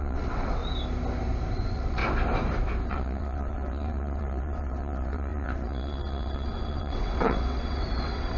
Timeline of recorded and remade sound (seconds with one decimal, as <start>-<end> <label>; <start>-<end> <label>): 0.0-0.6 remade; 0.6-1.5 recorded; 1.5-2.0 remade; 2.0-2.9 recorded; 2.9-8.4 remade